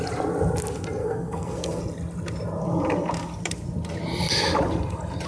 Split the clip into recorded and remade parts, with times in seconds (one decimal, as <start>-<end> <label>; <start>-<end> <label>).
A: 0.0-1.0 recorded; 1.0-1.8 remade; 1.8-5.3 recorded